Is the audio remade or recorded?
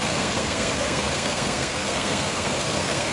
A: remade